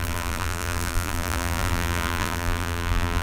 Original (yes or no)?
no